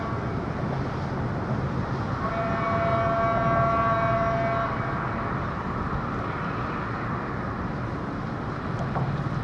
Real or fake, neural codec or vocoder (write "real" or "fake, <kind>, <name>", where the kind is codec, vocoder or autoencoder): real